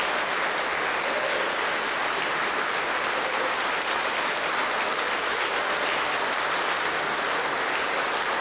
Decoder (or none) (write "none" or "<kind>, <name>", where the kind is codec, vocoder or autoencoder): none